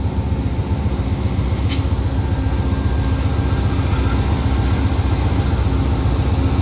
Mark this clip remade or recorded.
recorded